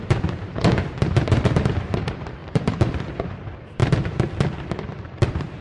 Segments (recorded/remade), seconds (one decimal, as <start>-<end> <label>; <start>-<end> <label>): 0.0-3.8 remade; 3.8-5.0 recorded; 5.0-5.6 remade